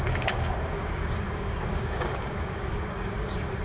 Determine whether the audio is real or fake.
fake